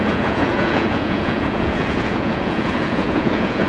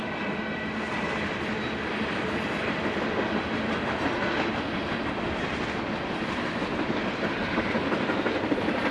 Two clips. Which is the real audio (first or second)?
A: second